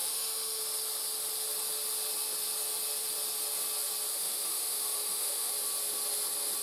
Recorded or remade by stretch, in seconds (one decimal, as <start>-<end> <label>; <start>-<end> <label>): 0.0-0.6 remade; 0.6-4.1 recorded; 4.1-5.5 remade; 5.5-6.6 recorded